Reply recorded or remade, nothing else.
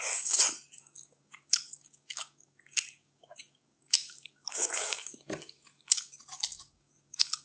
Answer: remade